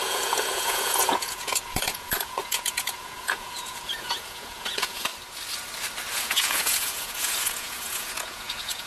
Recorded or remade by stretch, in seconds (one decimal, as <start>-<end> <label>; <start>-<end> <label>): 0.0-5.1 remade; 5.1-6.1 recorded; 6.1-8.9 remade